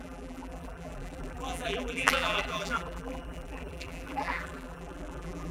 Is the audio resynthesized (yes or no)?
yes